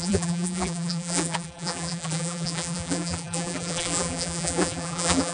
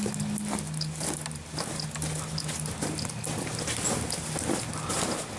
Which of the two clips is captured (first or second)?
second